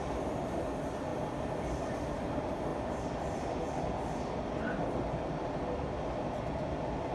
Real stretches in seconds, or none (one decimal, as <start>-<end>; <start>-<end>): 0.0-7.1